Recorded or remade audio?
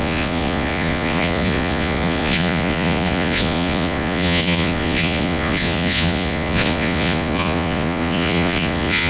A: remade